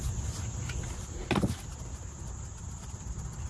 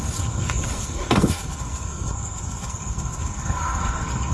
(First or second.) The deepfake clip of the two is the second